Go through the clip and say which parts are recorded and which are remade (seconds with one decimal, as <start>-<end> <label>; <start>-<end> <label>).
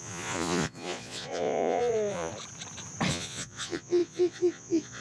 0.0-2.3 remade; 2.3-3.1 recorded; 3.1-5.0 remade